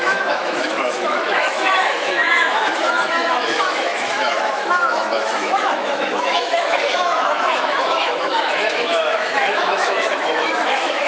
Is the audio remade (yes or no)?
yes